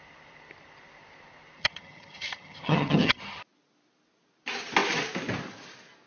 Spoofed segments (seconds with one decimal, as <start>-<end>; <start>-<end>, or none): 1.6-3.4